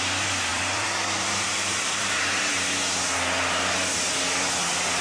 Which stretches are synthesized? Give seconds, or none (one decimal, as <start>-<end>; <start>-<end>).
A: 0.5-2.1